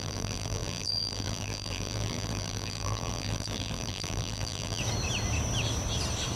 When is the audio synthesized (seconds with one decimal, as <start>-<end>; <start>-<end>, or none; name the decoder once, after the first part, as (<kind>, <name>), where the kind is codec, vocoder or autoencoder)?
0.0-4.8 (vocoder, BigVGAN v2)